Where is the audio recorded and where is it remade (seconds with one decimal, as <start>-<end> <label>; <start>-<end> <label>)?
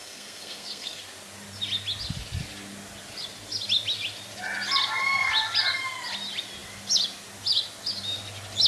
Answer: 0.0-1.0 remade; 1.0-8.7 recorded